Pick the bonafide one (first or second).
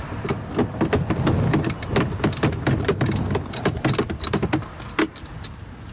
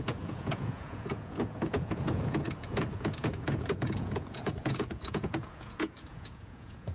first